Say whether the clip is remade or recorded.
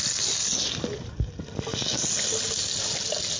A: recorded